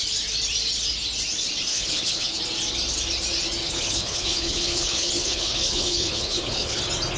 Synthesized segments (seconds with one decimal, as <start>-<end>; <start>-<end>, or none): 1.7-2.4; 3.6-6.8